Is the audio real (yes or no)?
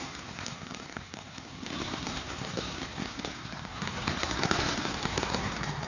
no